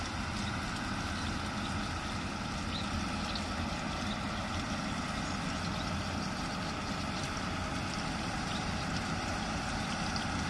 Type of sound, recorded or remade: recorded